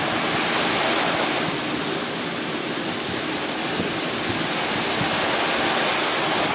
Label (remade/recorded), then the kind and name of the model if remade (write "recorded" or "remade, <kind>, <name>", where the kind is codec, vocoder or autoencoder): recorded